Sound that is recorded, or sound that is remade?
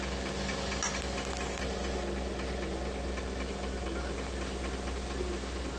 recorded